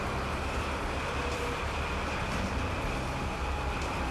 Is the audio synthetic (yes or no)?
yes